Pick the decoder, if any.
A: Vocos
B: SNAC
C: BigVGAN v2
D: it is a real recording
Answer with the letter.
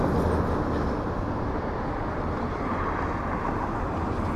D